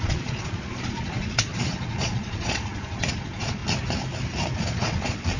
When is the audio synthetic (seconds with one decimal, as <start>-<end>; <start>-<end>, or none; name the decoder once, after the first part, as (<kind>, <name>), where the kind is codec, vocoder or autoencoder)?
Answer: 0.0-3.6 (vocoder, Vocos); 4.6-5.4